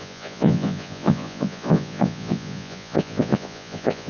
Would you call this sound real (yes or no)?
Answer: no